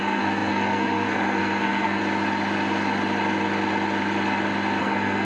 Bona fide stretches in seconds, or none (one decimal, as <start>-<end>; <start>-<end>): 2.0-4.8